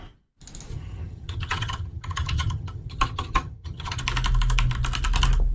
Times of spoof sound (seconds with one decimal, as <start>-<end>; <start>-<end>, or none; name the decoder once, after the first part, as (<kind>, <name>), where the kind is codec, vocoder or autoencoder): 0.7-4.0 (vocoder, HiFi-GAN)